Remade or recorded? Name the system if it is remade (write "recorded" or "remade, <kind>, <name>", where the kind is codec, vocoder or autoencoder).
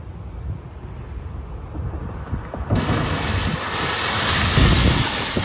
recorded